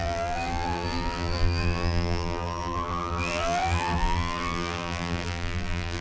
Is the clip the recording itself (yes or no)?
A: no